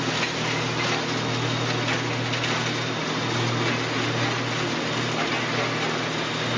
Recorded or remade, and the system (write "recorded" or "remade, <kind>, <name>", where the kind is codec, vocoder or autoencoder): recorded